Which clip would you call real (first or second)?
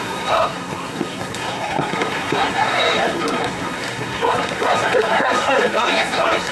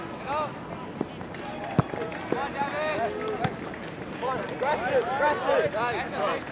second